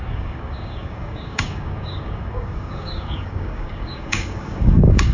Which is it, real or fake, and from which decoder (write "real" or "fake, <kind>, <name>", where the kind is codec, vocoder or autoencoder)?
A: fake, codec, DAC